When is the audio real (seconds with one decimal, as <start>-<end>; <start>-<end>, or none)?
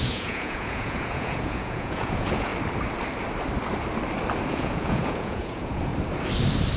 2.5-4.5; 5.9-6.8